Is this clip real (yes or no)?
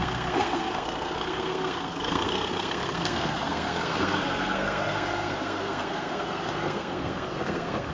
no